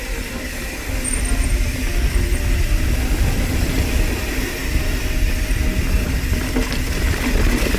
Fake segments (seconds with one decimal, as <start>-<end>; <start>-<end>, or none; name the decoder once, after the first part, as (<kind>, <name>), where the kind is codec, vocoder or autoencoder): none